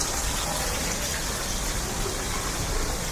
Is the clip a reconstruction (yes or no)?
no